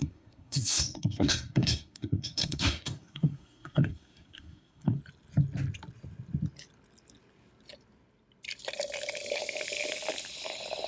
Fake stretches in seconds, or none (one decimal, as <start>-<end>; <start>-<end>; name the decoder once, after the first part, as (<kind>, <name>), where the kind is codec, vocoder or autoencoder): 0.0-5.0 (codec, SNAC)